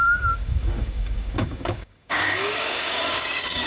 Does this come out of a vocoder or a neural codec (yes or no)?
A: yes